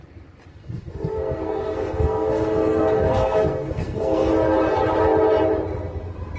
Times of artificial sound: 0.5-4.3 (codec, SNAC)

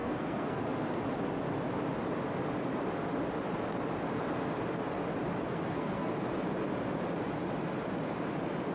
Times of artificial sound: 0.0-0.6 (codec, SNAC); 5.5-6.1

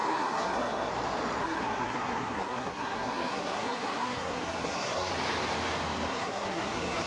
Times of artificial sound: 0.0-0.9 (codec, SNAC); 1.4-5.1; 6.1-7.1